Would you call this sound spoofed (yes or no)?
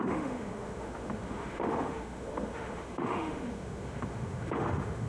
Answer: yes